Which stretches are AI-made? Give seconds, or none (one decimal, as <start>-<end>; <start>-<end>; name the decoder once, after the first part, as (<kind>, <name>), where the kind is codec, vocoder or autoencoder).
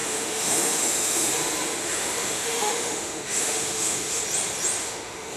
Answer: 0.0-1.3 (autoencoder, DAC-VAE); 1.8-4.2; 4.8-5.4